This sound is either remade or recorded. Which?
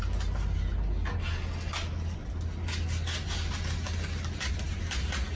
recorded